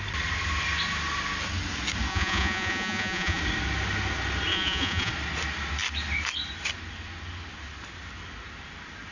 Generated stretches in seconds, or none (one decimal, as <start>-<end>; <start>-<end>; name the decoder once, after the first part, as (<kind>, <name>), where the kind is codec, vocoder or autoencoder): 2.1-3.4 (vocoder, Vocos); 4.5-5.1